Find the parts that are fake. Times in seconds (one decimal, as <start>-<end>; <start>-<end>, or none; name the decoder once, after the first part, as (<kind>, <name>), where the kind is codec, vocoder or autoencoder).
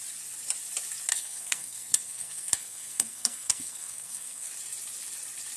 1.1-4.5 (codec, SNAC)